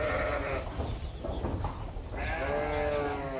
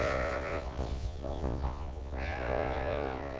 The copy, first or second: second